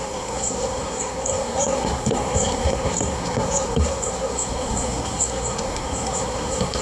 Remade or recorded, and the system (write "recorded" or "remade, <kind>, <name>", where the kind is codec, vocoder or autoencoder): remade, codec, SNAC